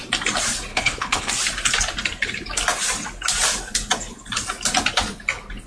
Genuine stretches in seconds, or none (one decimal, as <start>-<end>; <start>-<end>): 0.0-0.7; 1.3-5.7